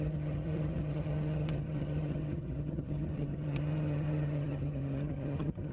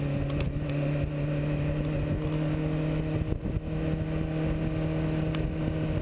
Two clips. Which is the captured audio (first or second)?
second